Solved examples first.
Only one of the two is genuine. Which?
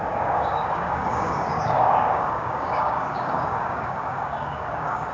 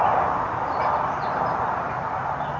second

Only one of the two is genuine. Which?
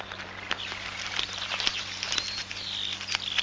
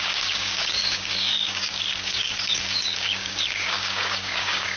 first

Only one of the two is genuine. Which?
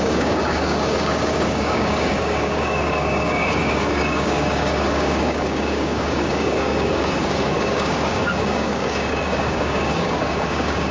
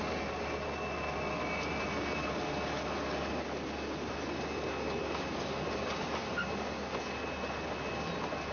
second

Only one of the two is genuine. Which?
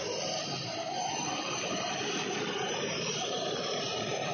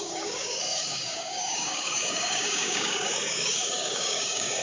first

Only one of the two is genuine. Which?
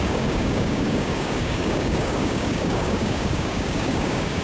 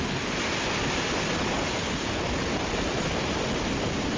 second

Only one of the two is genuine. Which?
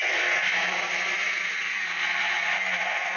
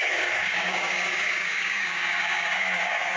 first